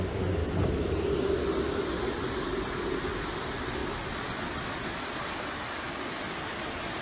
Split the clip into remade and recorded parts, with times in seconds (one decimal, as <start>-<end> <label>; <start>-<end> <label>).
0.0-7.0 recorded